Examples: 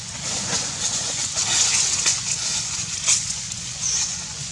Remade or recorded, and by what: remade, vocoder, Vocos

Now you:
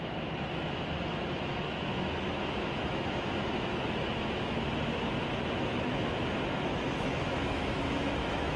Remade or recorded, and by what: remade, autoencoder, DAC-VAE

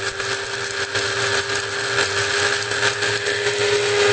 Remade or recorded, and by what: recorded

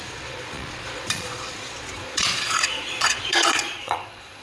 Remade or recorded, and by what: remade, vocoder, Vocos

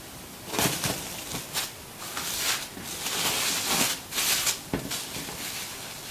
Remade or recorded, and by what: recorded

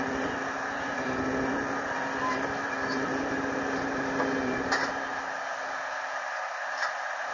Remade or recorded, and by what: recorded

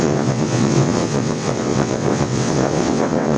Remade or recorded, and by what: remade, vocoder, WaveNeXt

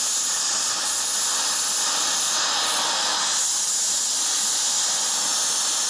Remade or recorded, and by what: recorded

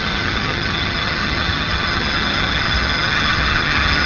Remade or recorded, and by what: remade, vocoder, HiFi-GAN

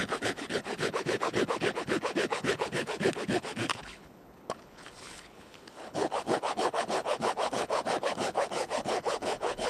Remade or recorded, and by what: remade, codec, HILCodec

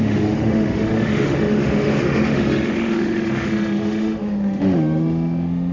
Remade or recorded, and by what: remade, autoencoder, DAC-VAE